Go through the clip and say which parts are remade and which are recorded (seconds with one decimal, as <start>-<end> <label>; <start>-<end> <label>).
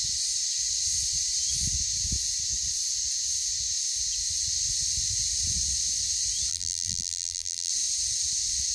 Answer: 0.0-6.5 recorded; 6.5-7.7 remade; 7.7-8.7 recorded